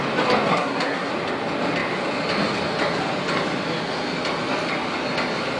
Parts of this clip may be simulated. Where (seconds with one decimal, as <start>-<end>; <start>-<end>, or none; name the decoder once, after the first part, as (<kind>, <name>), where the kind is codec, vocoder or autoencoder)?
0.5-1.1 (codec, SNAC)